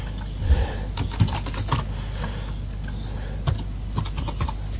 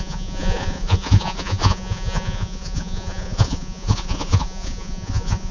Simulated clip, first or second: second